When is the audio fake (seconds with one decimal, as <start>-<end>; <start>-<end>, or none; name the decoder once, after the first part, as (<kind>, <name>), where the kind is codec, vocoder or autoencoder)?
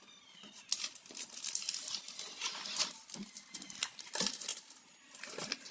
none